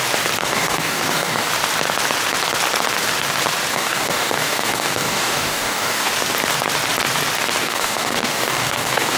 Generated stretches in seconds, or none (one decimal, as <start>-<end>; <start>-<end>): 0.4-1.5; 3.7-6.1; 7.6-9.2